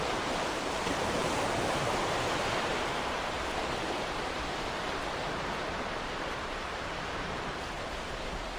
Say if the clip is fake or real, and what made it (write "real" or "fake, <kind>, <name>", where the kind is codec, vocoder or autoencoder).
fake, vocoder, BigVGAN v2